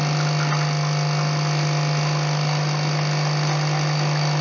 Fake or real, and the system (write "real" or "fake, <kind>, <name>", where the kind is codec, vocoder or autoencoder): real